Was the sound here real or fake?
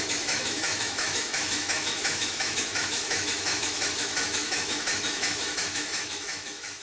fake